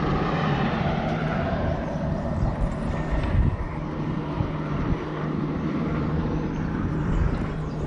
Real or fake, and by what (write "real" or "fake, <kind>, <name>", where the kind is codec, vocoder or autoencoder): fake, vocoder, BigVGAN v2